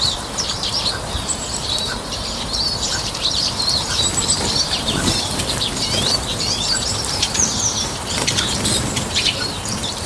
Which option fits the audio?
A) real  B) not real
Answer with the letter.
B